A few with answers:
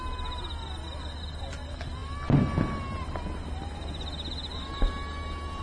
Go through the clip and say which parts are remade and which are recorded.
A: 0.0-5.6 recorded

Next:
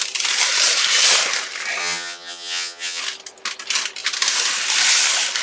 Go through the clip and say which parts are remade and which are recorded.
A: 0.0-1.8 recorded; 1.8-3.0 remade; 3.0-5.4 recorded

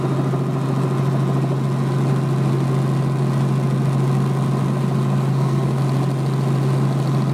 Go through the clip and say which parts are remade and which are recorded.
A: 0.0-5.3 recorded; 5.3-5.8 remade; 5.8-7.3 recorded

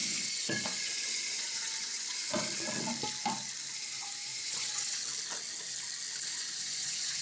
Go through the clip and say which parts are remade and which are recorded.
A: 0.0-2.5 remade; 2.5-3.9 recorded; 3.9-5.0 remade; 5.0-6.3 recorded; 6.3-7.2 remade

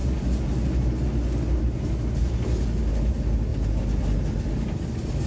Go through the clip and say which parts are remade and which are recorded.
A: 0.0-5.3 recorded

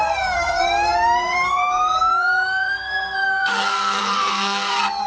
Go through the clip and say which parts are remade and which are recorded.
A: 0.0-5.1 remade

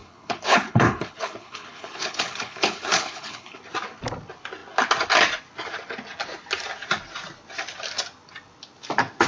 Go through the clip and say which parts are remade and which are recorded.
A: 0.0-3.6 remade; 3.6-9.3 recorded

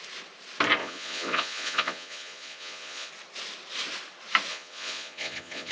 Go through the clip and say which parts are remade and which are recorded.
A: 0.0-0.8 recorded; 0.8-3.1 remade; 3.1-4.5 recorded; 4.5-5.7 remade